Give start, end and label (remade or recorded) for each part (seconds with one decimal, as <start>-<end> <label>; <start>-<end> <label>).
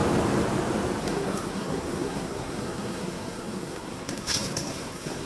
0.0-1.0 recorded; 1.0-5.3 remade